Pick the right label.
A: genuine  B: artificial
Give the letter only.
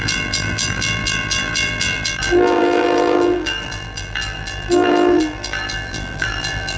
B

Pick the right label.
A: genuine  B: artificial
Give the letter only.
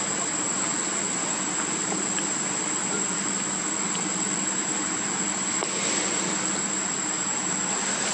B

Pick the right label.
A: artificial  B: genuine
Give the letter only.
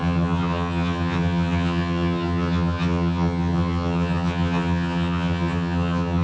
A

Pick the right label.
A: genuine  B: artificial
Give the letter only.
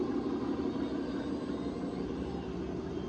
A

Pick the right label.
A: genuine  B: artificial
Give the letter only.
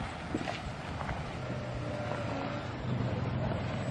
A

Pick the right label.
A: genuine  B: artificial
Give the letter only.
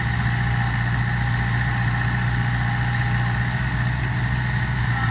A